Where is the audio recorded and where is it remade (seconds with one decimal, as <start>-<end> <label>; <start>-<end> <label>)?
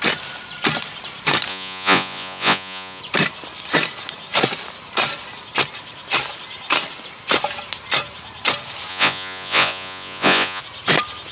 0.0-1.5 recorded; 1.5-3.0 remade; 3.0-8.9 recorded; 8.9-10.6 remade; 10.6-11.3 recorded